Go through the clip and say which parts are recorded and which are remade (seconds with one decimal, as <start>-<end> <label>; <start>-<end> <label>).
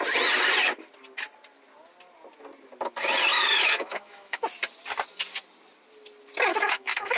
0.0-3.3 recorded; 3.3-4.4 remade; 4.4-6.5 recorded; 6.5-7.2 remade